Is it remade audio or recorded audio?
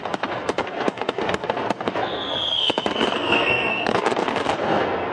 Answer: remade